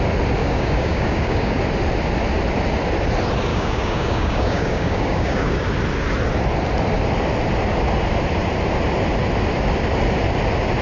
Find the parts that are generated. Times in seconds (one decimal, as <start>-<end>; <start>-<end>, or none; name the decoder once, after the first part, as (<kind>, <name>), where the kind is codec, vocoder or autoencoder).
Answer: 0.4-1.6 (codec, DAC); 3.5-5.6